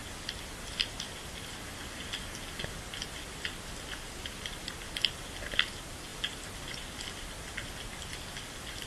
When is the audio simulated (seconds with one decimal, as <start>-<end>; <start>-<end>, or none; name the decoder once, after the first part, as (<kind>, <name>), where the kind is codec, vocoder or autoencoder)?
none